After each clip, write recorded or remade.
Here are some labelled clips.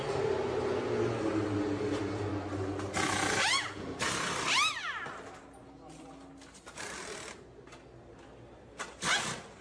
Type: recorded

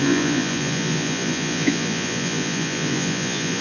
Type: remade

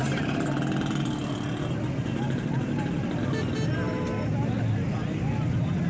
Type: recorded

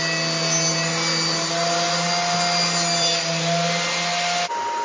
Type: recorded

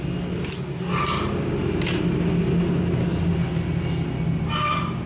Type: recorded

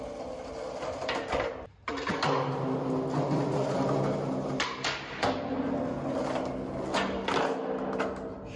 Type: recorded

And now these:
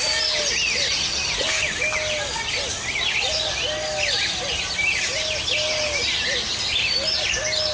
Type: recorded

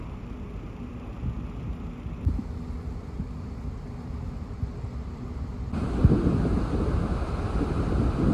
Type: recorded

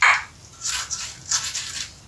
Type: recorded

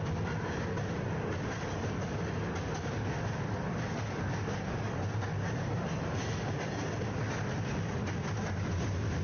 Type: recorded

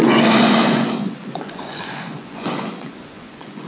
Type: remade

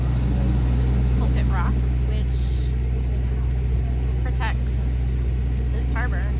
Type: recorded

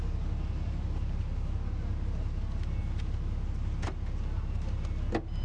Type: recorded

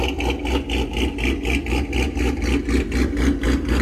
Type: recorded